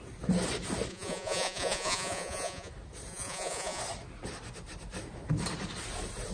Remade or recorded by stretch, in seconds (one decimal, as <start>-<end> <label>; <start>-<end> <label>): 0.0-0.9 recorded; 0.9-2.7 remade; 2.7-3.1 recorded; 3.1-3.8 remade; 3.8-6.3 recorded